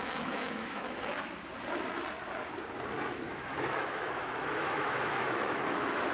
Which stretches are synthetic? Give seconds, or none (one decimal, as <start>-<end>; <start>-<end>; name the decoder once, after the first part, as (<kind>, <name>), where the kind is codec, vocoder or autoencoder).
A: 0.0-1.1 (autoencoder, DAC-VAE); 3.3-6.1